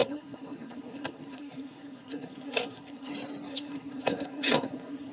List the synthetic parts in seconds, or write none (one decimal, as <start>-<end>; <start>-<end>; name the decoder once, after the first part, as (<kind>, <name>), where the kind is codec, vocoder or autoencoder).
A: 0.0-3.1 (codec, SNAC); 3.5-5.1